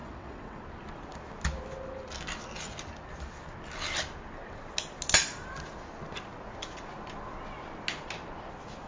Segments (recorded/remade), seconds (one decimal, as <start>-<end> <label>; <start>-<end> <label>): 0.0-0.6 remade; 0.6-8.9 recorded